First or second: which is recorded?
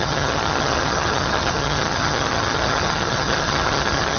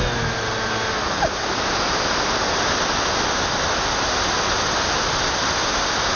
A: second